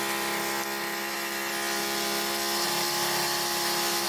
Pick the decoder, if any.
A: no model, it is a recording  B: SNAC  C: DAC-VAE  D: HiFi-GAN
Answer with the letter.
A